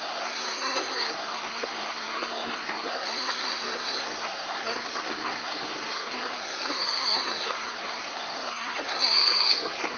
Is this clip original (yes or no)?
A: no